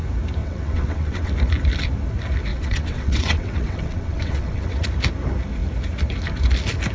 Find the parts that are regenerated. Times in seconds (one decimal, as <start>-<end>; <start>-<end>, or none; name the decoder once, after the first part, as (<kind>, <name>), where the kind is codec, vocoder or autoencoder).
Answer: 0.4-1.3 (vocoder, WaveNeXt); 2.5-4.9